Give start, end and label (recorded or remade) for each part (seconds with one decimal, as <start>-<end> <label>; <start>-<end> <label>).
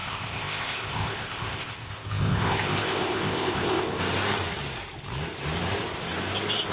0.0-4.0 remade; 4.0-6.7 recorded